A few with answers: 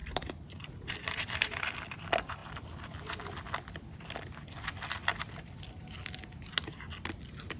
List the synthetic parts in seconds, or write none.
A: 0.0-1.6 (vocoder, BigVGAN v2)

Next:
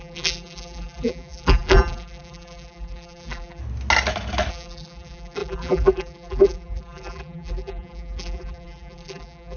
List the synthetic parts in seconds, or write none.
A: 0.0-3.6 (vocoder, BigVGAN v2); 4.5-9.6

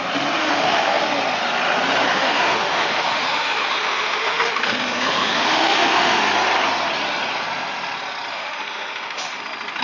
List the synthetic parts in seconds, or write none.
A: 0.4-1.0 (autoencoder, DAC-VAE); 2.1-6.2; 8.3-9.4

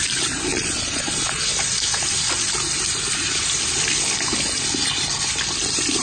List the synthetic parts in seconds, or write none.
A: 0.5-1.4 (vocoder, Vocos)

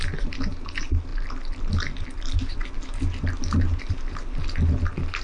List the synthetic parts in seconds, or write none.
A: none

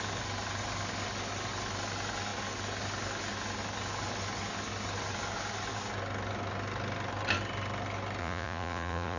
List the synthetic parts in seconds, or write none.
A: 8.2-9.2 (vocoder, Vocos)